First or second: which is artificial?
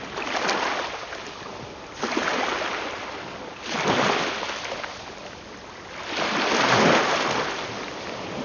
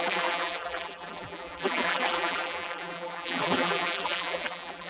second